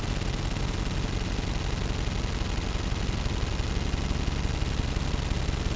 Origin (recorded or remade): recorded